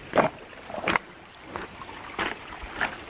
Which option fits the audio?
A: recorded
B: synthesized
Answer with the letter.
A